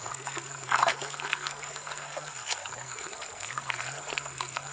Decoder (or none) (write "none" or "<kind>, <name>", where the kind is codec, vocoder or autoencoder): codec, SNAC